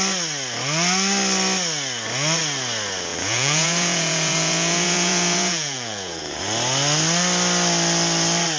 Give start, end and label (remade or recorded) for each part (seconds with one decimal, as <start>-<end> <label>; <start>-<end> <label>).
0.0-3.1 recorded; 3.1-6.4 remade; 6.4-8.6 recorded